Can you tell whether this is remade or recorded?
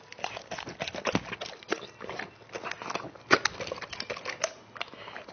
recorded